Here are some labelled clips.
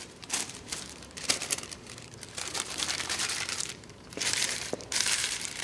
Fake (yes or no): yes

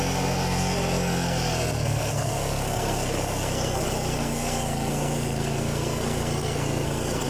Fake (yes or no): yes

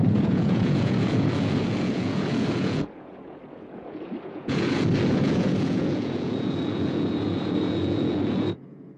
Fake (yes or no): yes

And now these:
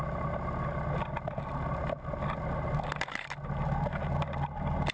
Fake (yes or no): no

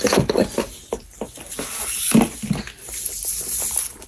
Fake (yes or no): no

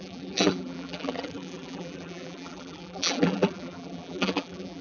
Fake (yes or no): yes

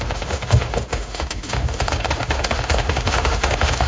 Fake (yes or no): yes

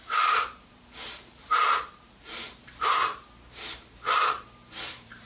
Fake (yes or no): yes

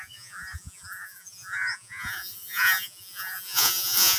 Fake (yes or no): yes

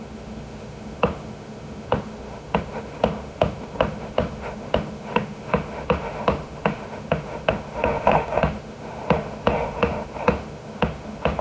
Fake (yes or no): yes